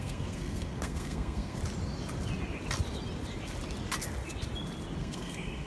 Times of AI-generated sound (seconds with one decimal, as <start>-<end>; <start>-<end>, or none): 0.0-1.6; 5.0-5.7